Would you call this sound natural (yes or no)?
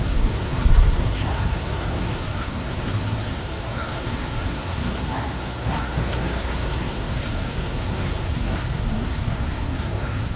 no